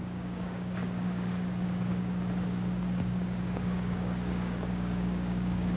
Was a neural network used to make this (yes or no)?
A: yes